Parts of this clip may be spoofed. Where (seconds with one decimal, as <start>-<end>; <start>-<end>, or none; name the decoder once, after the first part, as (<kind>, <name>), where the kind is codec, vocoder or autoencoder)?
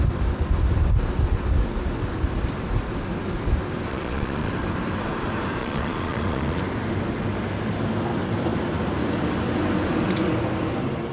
3.9-4.5 (vocoder, Vocos); 5.6-6.6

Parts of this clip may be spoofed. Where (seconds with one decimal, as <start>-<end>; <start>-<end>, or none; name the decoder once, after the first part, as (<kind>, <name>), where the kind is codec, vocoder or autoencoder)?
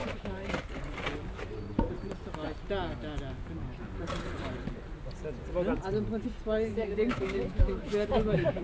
0.0-0.5 (autoencoder, DAC-VAE); 6.7-8.6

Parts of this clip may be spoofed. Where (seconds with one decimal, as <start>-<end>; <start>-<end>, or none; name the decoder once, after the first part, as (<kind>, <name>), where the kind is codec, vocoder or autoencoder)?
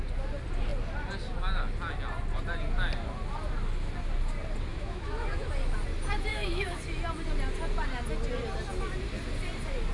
4.7-5.5 (autoencoder, DAC-VAE); 6.3-6.8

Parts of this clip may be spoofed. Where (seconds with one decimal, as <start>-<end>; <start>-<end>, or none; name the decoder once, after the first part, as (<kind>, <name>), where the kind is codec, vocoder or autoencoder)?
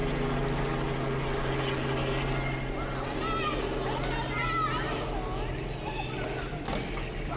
none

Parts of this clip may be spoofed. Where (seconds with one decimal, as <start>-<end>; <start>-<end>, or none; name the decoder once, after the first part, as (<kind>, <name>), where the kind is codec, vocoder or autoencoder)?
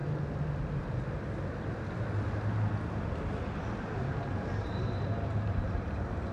3.8-6.3 (vocoder, BigVGAN v2)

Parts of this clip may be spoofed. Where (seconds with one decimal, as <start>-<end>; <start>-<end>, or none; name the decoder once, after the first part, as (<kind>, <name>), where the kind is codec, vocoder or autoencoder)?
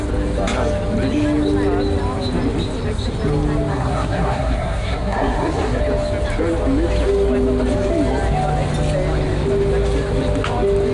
3.7-5.8 (codec, SNAC)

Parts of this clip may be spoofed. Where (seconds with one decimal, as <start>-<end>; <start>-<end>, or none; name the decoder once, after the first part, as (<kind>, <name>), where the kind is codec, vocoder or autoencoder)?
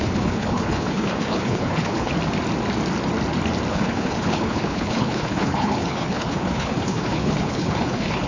0.0-2.1 (codec, HILCodec); 3.7-8.3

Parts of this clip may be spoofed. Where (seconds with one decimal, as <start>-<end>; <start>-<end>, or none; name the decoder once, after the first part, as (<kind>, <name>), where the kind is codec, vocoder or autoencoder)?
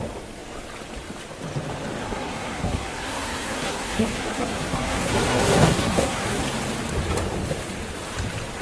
2.0-6.4 (codec, SNAC)